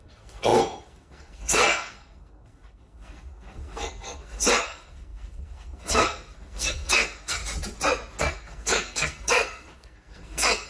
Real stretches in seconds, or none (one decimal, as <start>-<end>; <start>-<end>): 7.4-8.2

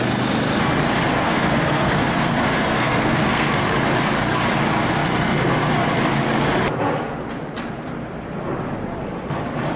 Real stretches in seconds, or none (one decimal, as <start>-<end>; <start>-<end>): 0.0-1.1; 3.7-9.8

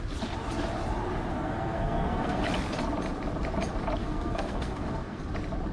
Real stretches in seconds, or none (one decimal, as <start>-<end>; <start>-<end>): 0.0-1.3; 2.4-4.0; 5.2-5.7

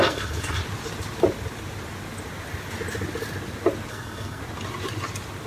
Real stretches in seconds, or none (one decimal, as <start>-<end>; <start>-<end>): 0.6-3.9; 4.4-5.5

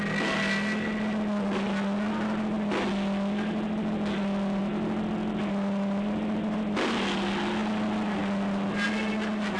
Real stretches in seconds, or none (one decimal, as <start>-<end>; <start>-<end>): 0.0-9.6

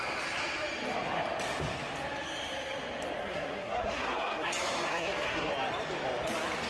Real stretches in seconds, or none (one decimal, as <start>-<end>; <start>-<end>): 0.0-3.2; 4.5-4.9; 5.5-6.7